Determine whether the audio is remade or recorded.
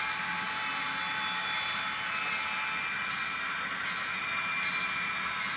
recorded